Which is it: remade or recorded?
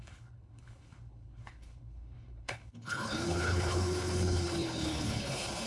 remade